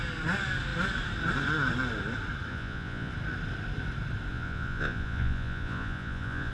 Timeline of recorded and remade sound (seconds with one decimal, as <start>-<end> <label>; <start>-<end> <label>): 0.0-2.5 recorded; 2.5-3.1 remade; 3.1-4.3 recorded; 4.3-6.5 remade